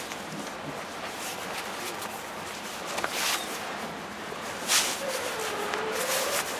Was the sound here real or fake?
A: real